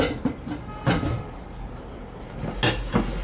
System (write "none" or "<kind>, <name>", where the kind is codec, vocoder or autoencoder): none